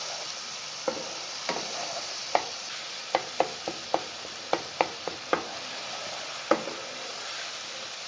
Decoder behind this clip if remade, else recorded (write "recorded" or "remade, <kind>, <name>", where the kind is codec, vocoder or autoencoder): remade, vocoder, BigVGAN v2